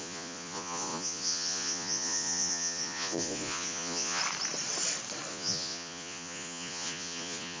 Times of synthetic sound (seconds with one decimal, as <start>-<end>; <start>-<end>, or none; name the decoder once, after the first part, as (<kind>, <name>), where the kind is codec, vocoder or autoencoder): 0.0-4.2 (vocoder, Vocos); 5.3-7.6